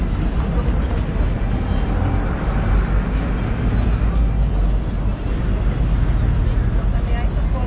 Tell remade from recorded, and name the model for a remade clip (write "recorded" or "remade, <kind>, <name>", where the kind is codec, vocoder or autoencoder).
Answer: recorded